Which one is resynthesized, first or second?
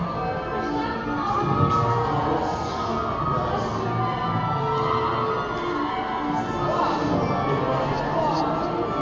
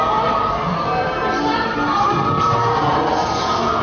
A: second